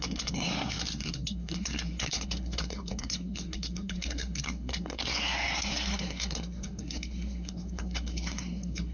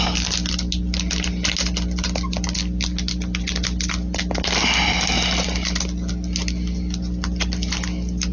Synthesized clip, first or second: first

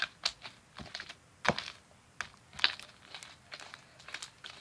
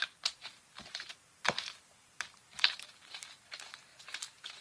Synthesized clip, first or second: second